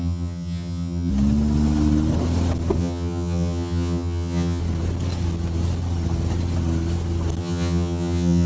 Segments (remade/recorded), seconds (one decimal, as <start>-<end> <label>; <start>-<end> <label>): 0.0-1.1 remade; 1.1-2.8 recorded; 2.8-4.6 remade; 4.6-7.4 recorded; 7.4-8.5 remade